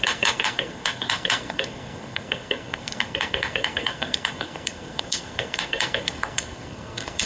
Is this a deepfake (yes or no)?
yes